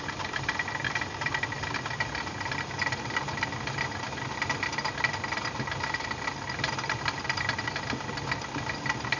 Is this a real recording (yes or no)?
yes